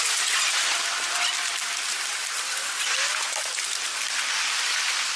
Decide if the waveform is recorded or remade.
recorded